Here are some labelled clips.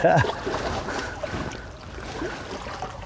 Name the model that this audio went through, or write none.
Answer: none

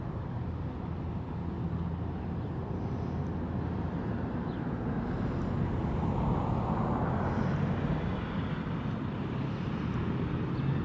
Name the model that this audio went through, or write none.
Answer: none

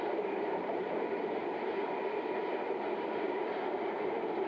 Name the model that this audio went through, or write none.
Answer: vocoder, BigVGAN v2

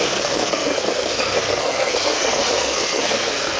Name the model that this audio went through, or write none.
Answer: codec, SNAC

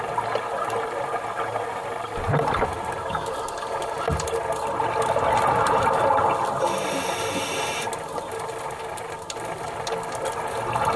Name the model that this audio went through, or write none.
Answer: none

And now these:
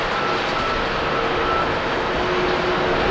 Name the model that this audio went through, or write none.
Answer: none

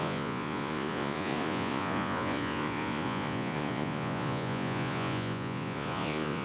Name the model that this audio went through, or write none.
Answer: vocoder, Vocos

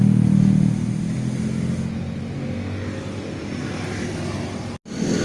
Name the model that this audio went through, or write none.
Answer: none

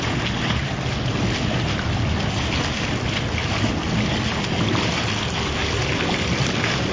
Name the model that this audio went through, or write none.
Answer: none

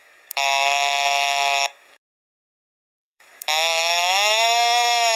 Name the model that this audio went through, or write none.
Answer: codec, DAC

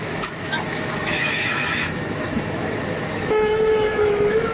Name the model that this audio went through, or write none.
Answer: autoencoder, DAC-VAE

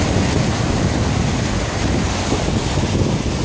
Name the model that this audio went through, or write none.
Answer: none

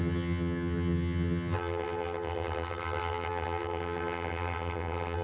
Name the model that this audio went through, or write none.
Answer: vocoder, HiFi-GAN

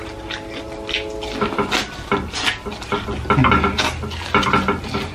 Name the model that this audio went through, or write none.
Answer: none